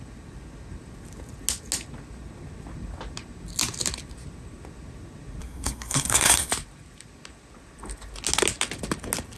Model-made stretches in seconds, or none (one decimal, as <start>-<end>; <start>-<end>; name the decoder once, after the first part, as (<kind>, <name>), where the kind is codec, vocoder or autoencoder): 5.4-6.5 (codec, SNAC)